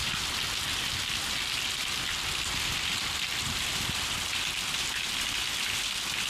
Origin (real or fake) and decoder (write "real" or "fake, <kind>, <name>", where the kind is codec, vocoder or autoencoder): real